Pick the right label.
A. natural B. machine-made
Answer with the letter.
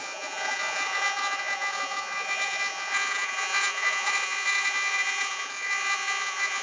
B